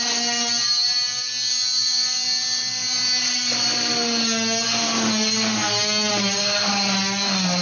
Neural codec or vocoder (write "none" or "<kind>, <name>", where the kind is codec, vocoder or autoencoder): none